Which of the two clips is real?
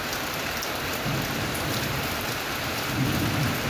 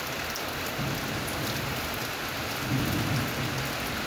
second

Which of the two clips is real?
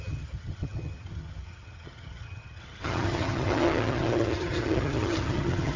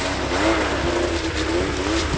second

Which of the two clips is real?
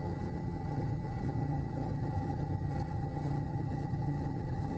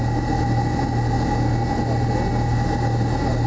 second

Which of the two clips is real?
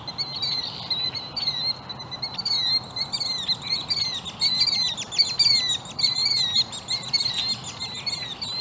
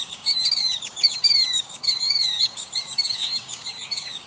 first